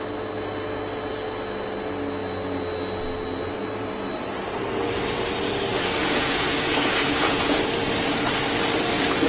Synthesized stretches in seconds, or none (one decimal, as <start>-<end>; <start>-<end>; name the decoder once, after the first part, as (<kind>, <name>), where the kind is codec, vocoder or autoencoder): 6.0-7.6 (vocoder, Vocos)